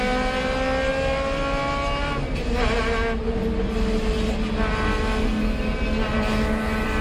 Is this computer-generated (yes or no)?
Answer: no